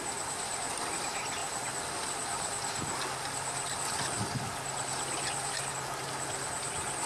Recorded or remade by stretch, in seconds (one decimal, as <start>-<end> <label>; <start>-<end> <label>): 0.0-7.1 recorded